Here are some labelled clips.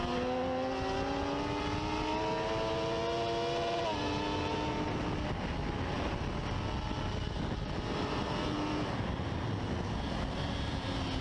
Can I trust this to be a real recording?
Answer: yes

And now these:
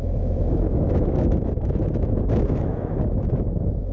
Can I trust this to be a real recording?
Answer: no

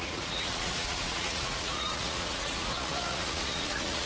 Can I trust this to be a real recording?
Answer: no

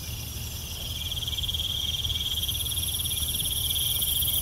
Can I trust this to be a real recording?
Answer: yes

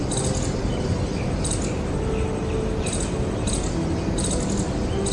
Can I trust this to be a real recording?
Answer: yes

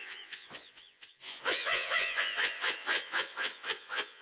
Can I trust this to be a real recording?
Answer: no